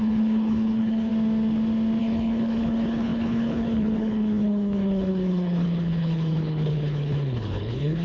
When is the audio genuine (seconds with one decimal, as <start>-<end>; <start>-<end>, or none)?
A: 1.1-2.0